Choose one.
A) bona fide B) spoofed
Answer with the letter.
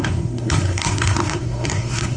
B